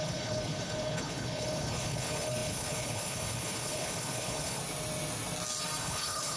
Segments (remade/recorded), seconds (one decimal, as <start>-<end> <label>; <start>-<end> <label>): 0.0-4.6 remade; 4.6-5.8 recorded; 5.8-6.4 remade